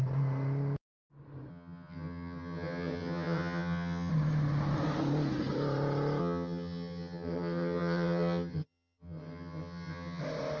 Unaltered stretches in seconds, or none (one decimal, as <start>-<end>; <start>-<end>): 0.0-1.5; 4.1-6.2; 10.2-10.6